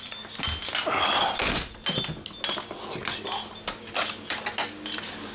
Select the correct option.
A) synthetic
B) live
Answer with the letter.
B